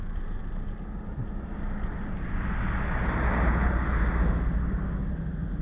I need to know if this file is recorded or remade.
recorded